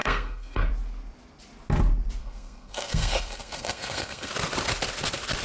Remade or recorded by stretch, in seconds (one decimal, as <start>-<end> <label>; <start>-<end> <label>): 0.0-0.7 remade; 0.7-2.2 recorded; 2.2-4.3 remade; 4.3-5.4 recorded